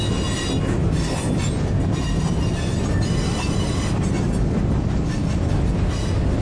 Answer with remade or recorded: recorded